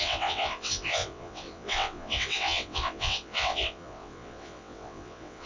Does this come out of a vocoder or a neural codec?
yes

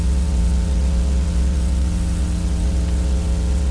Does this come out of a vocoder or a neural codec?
yes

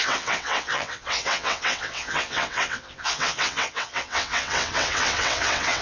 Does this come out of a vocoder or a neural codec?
yes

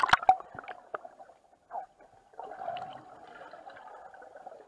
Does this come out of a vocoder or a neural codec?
no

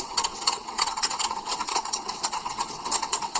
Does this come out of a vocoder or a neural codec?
yes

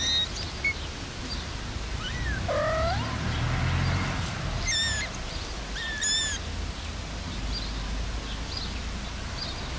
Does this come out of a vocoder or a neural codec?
no